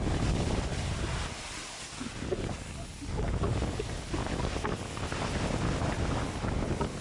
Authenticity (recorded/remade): recorded